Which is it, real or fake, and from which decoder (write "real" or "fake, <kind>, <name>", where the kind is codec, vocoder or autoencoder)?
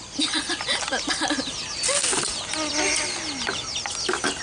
real